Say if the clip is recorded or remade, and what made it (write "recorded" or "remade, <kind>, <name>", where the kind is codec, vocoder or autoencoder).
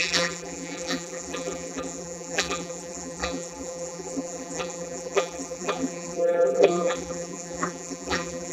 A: remade, vocoder, BigVGAN v2